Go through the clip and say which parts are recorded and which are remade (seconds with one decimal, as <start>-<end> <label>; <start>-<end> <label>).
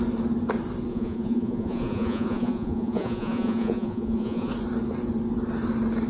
0.0-0.9 recorded; 0.9-4.5 remade; 4.5-6.1 recorded